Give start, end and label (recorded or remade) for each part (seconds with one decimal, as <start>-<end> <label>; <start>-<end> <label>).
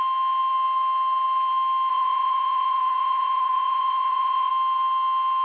0.0-1.9 recorded; 1.9-4.5 remade; 4.5-5.4 recorded